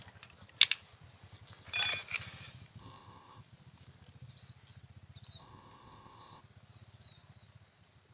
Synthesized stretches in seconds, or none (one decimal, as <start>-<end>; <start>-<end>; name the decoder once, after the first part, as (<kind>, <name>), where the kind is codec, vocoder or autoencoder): 2.8-3.4 (codec, ZipCodec); 5.4-6.4

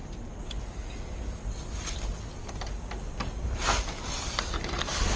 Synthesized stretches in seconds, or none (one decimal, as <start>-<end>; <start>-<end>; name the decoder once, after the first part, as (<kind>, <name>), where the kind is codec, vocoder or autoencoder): 3.1-5.2 (vocoder, BigVGAN v2)

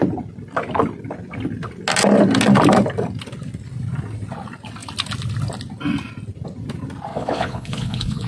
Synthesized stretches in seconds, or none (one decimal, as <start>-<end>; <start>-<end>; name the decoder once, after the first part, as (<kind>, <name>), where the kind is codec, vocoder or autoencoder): 7.1-8.3 (vocoder, Vocos)